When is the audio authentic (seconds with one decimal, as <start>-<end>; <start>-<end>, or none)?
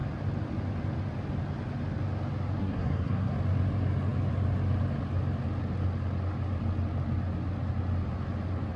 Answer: 0.0-2.6; 3.3-8.8